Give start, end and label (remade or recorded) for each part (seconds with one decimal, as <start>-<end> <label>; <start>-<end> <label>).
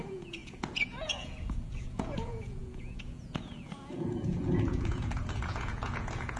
0.0-6.4 remade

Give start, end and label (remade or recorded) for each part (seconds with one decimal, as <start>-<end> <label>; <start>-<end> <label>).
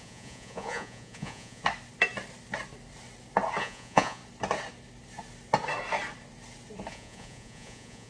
0.0-1.6 remade; 1.6-3.6 recorded; 3.6-4.2 remade; 4.2-6.9 recorded; 6.9-8.1 remade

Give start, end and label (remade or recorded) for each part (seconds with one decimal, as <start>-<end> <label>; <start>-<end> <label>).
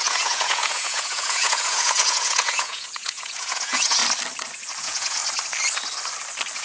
0.0-4.0 remade; 4.0-4.8 recorded; 4.8-5.2 remade; 5.2-6.6 recorded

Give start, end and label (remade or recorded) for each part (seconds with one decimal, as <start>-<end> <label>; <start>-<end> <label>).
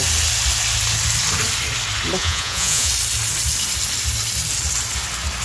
0.0-2.2 recorded; 2.2-2.9 remade; 2.9-5.4 recorded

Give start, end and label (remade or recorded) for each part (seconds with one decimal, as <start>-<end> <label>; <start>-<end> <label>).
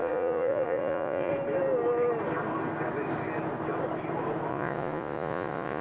0.0-1.3 remade; 1.3-4.5 recorded; 4.5-5.8 remade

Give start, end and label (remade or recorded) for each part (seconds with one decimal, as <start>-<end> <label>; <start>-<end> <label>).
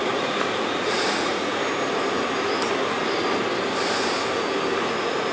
0.0-1.6 remade; 1.6-4.8 recorded; 4.8-5.3 remade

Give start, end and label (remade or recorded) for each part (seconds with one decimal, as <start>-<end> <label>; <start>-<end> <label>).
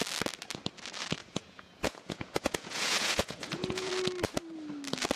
0.0-1.2 recorded; 1.2-3.9 remade; 3.9-5.2 recorded